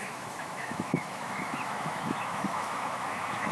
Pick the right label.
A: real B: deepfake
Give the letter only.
B